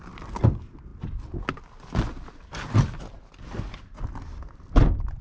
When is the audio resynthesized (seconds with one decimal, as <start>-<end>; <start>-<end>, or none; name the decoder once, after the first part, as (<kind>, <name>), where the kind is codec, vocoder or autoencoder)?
none